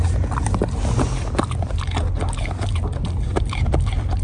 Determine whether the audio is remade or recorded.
recorded